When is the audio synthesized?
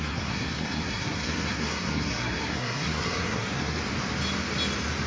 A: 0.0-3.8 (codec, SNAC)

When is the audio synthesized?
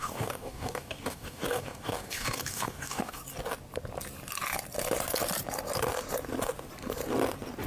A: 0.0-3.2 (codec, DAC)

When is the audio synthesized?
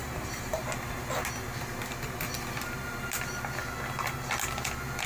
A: 0.0-0.6 (vocoder, BigVGAN v2)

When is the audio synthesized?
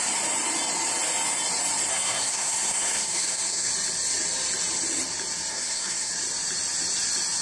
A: 1.9-3.7 (codec, SNAC); 5.5-6.1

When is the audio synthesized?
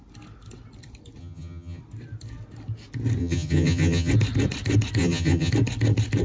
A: 1.2-1.8 (vocoder, HiFi-GAN); 3.2-4.1; 5.0-5.5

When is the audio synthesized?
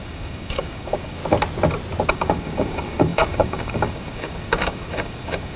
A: 0.0-1.2 (codec, DAC); 2.1-5.6